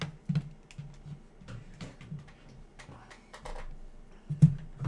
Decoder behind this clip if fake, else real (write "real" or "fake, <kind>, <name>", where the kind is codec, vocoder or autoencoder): real